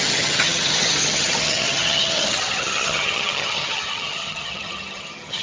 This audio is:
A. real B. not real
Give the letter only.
B